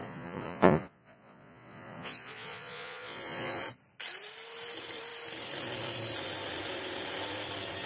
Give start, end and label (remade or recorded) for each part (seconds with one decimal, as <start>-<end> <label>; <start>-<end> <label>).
0.0-3.6 remade; 3.6-7.9 recorded